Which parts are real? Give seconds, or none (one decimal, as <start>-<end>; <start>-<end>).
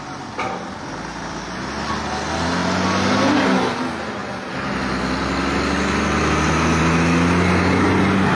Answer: 0.0-8.3